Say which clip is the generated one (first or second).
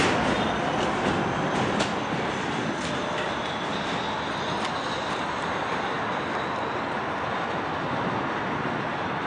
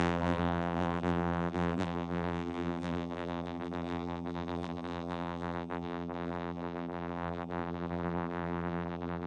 second